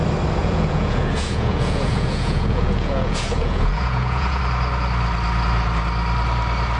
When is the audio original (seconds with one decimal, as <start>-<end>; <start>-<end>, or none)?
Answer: 0.0-0.4; 4.4-6.8